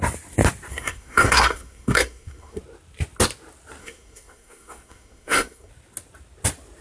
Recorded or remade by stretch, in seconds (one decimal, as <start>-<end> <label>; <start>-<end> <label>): 0.0-0.7 recorded; 0.7-2.6 remade; 2.6-3.8 recorded; 3.8-5.7 remade; 5.7-6.8 recorded